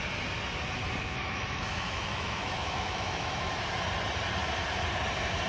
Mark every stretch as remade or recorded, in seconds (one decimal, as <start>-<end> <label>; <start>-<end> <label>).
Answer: 0.0-1.2 recorded; 1.2-3.5 remade; 3.5-5.5 recorded